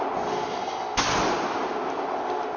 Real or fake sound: real